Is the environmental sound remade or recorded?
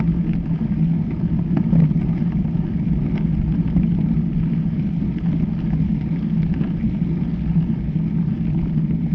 recorded